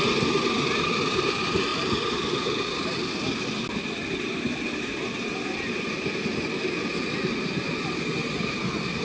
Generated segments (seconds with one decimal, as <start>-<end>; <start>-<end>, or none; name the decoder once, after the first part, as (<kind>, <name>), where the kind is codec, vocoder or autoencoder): none